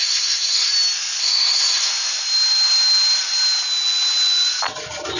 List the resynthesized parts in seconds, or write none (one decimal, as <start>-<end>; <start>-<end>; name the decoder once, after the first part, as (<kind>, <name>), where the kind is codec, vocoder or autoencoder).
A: 0.0-0.7 (codec, SNAC); 1.2-1.9